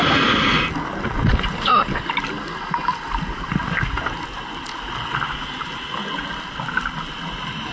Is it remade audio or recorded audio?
recorded